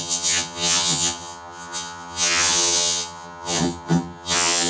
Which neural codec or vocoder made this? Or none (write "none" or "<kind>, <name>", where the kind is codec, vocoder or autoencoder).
vocoder, HiFi-GAN